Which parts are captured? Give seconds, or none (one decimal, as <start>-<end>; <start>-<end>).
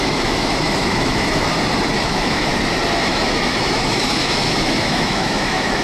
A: 1.5-2.0; 2.5-3.0